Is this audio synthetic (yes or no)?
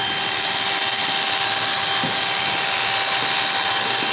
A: no